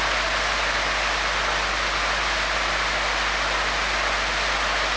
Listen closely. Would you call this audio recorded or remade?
recorded